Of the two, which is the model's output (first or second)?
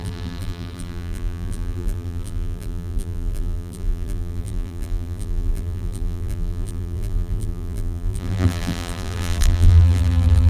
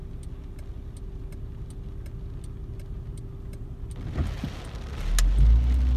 first